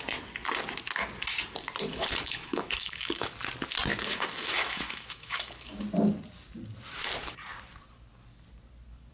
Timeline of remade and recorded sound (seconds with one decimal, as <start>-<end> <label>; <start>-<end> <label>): 0.0-1.9 recorded; 1.9-3.3 remade; 3.3-3.9 recorded; 3.9-5.8 remade; 5.8-9.1 recorded